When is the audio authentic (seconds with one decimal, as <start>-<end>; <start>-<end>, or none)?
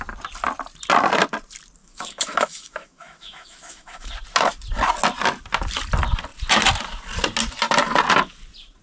0.0-1.8; 4.1-8.8